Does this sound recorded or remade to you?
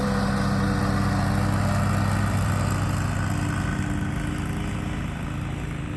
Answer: recorded